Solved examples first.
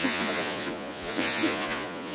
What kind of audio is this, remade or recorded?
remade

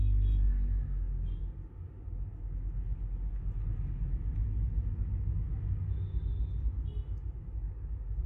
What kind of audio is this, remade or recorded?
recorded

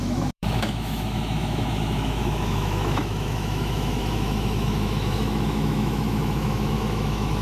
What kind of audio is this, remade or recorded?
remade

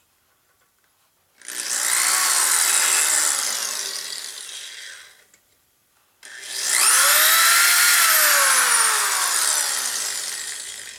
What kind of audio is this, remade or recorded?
recorded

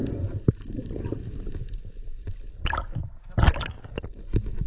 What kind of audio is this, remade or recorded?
recorded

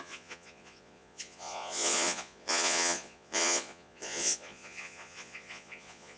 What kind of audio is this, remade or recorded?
remade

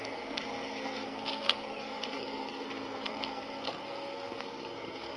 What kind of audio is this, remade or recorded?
remade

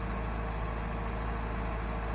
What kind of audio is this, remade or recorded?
recorded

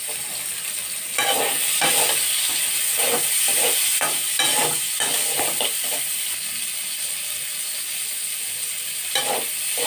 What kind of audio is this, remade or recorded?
recorded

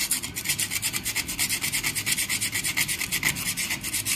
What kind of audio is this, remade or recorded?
recorded